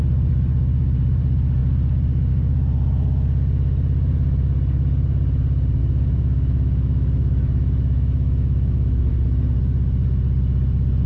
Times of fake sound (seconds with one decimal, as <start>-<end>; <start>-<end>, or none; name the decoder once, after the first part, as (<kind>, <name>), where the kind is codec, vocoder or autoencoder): 5.8-9.1 (autoencoder, DAC-VAE)

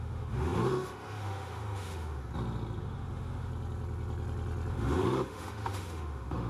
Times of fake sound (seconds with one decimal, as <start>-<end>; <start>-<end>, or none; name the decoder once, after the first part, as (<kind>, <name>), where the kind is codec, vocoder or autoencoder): 0.0-2.2 (autoencoder, DAC-VAE); 2.8-3.5; 4.7-6.5